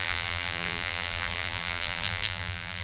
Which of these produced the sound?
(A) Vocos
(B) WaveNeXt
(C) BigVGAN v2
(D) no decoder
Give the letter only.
C